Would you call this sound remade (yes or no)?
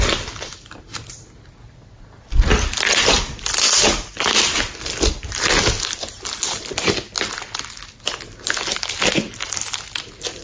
no